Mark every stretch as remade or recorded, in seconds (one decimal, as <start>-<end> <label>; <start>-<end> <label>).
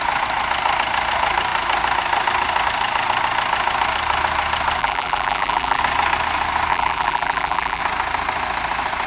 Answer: 0.0-4.8 recorded; 4.8-5.8 remade; 5.8-6.7 recorded; 6.7-7.8 remade; 7.8-9.1 recorded